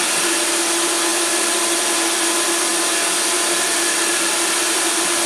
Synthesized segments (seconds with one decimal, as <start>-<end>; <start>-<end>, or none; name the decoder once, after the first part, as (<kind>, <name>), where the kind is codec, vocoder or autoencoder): 1.1-2.3 (vocoder, BigVGAN v2)